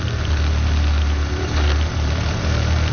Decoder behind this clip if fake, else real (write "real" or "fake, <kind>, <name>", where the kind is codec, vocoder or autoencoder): real